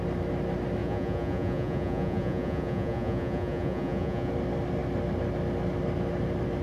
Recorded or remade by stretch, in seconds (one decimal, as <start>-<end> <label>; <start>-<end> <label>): 0.0-0.8 recorded; 0.8-4.3 remade; 4.3-6.6 recorded